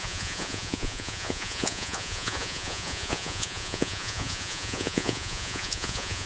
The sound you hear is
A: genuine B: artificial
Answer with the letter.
B